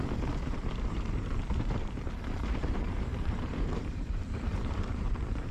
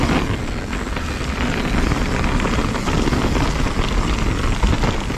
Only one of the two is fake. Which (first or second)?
first